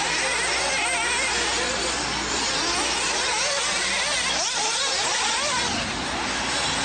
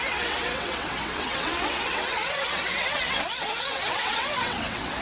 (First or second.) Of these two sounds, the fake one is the second